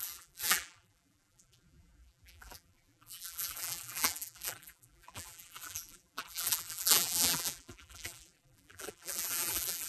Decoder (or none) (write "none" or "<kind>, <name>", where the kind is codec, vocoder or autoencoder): vocoder, BigVGAN v2